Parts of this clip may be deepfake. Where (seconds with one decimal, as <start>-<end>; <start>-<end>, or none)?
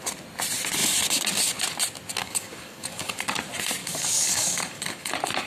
2.2-3.1; 3.8-5.1